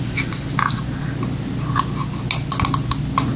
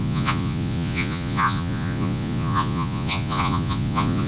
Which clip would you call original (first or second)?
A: first